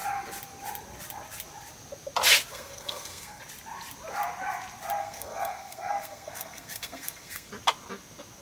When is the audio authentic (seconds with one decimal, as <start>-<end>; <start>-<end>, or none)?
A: 0.0-2.5; 3.4-5.0; 7.5-8.4